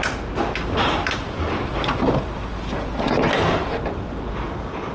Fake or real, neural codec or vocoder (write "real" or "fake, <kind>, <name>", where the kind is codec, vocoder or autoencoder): real